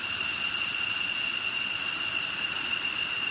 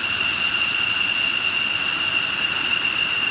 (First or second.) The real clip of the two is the second